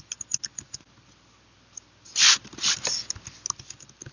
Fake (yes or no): no